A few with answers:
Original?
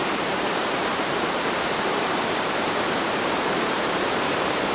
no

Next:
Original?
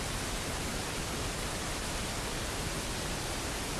yes